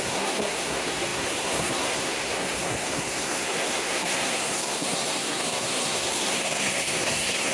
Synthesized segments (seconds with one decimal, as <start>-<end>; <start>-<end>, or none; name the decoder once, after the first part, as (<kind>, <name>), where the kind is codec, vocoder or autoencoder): 0.0-7.5 (codec, SNAC)